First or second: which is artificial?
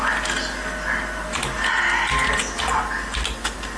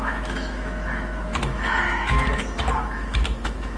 second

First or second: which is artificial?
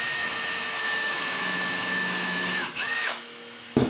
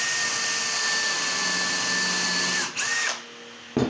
first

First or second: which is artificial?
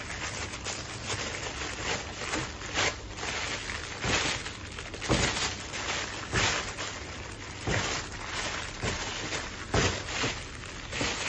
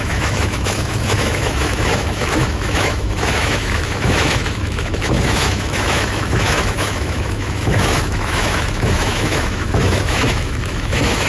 second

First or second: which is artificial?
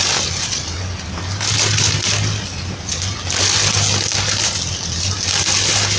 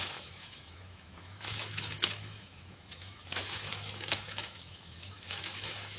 second